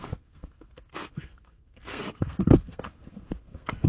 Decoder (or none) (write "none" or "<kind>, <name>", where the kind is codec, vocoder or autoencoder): codec, SNAC